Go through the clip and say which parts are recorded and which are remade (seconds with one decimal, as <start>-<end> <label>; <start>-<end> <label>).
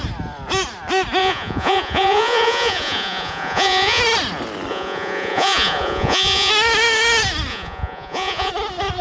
0.0-1.2 recorded; 1.2-4.0 remade; 4.0-4.7 recorded; 4.7-6.5 remade; 6.5-7.5 recorded; 7.5-8.5 remade; 8.5-9.0 recorded